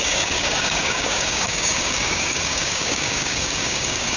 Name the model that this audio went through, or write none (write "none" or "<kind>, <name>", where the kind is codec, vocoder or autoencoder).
codec, DAC